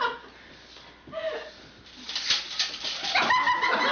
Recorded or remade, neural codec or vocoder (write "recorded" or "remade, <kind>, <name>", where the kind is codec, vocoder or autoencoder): recorded